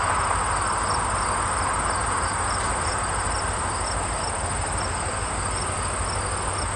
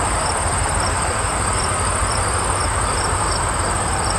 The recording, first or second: first